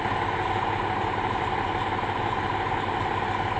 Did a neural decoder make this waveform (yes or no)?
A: no